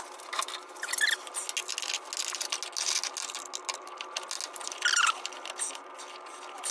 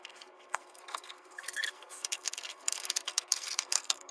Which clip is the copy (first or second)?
second